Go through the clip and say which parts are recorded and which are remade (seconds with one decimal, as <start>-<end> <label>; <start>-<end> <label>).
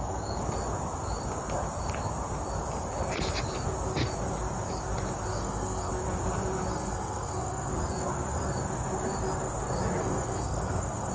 0.0-5.3 recorded; 5.3-5.9 remade; 5.9-6.7 recorded; 6.7-7.7 remade; 7.7-10.0 recorded; 10.0-11.1 remade